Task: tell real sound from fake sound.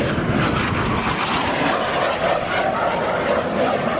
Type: real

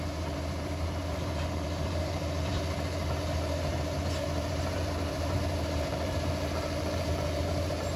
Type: fake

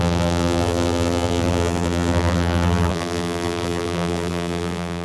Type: fake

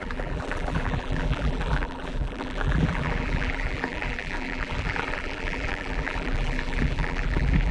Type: fake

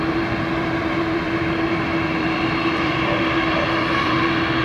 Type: fake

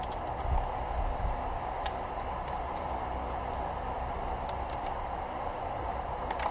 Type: real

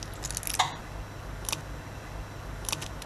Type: real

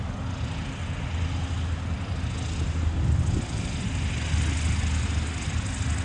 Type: real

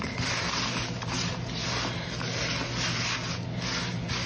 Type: real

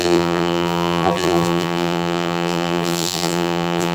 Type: fake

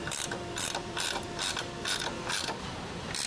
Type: fake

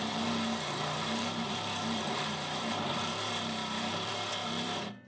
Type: fake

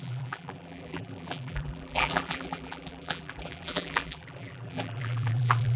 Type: fake